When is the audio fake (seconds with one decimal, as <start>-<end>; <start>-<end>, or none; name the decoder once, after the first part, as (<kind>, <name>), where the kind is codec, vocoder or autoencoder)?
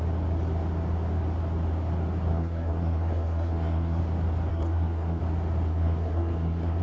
2.3-4.0 (codec, SNAC); 4.5-5.2; 5.7-6.8